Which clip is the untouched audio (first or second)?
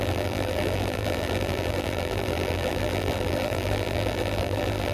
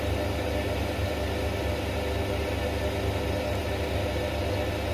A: second